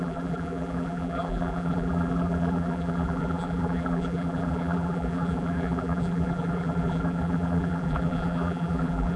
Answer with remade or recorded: remade